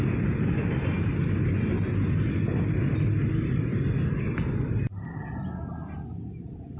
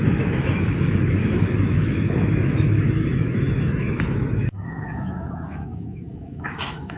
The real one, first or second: first